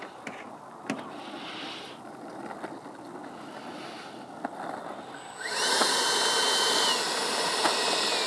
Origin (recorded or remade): recorded